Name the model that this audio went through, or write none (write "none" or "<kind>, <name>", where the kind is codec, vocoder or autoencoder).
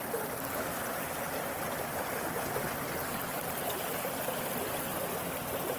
none